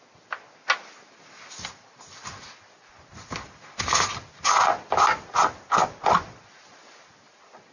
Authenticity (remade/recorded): recorded